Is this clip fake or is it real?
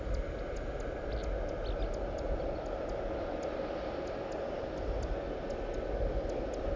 real